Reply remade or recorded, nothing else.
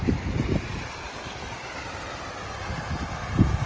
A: recorded